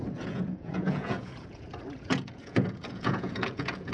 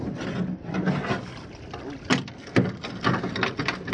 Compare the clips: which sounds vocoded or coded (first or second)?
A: first